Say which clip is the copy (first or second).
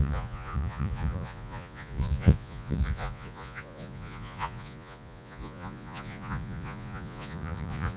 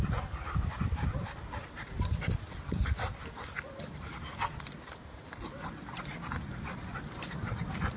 first